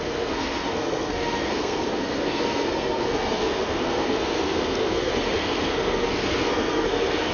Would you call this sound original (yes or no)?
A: no